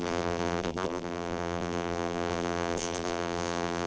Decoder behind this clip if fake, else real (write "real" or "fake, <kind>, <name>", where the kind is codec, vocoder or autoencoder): fake, vocoder, BigVGAN v2